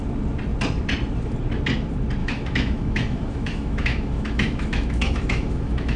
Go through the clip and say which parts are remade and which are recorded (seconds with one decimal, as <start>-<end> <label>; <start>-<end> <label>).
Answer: 0.0-2.2 recorded; 2.2-6.0 remade